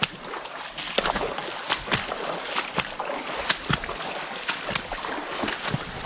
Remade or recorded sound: recorded